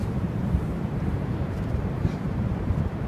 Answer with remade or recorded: remade